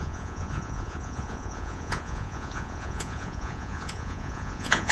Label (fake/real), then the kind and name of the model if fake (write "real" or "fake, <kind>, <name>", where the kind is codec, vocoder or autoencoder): fake, vocoder, Vocos